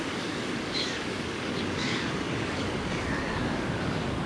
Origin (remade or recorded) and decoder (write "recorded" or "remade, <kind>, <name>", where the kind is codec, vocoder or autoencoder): remade, codec, DAC